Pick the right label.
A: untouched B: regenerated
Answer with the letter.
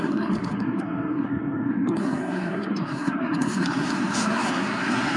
B